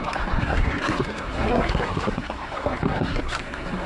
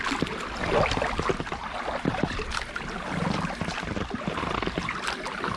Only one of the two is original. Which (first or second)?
second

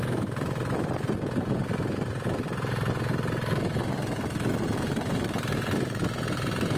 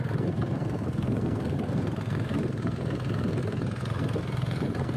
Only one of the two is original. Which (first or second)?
first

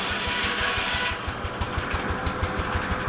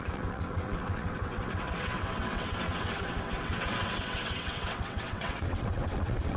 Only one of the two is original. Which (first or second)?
first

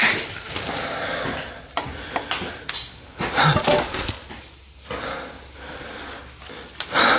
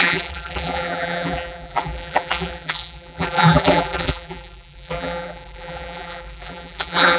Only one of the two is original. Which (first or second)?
first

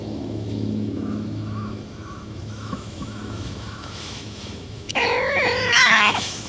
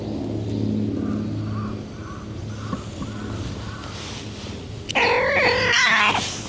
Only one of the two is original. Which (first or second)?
second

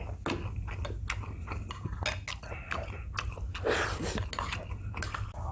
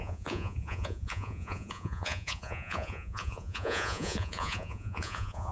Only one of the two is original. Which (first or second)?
first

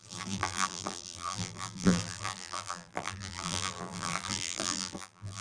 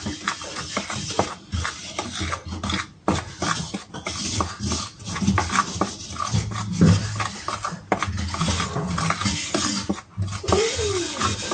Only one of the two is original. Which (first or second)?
second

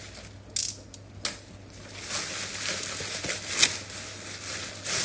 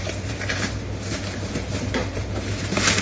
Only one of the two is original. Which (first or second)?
first